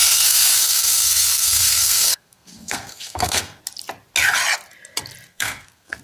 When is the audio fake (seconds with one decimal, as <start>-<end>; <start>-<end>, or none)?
0.0-3.6; 5.3-6.0